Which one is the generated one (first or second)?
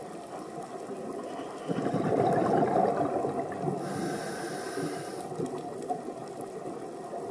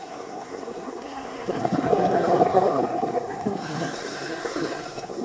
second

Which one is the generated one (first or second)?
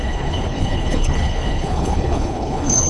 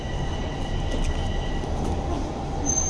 first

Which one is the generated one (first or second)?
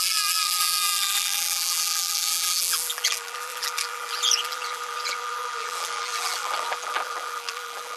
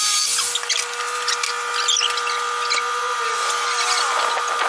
first